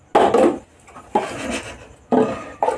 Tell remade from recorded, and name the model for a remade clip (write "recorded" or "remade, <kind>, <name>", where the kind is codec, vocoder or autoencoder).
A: recorded